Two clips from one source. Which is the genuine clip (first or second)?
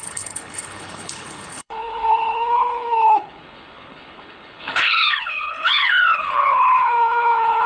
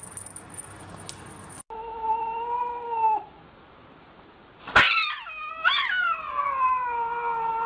second